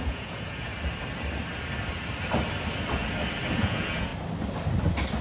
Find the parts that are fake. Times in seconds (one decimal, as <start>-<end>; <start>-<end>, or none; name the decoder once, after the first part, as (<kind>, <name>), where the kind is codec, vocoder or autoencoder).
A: 0.0-0.7 (vocoder, Vocos); 3.5-4.1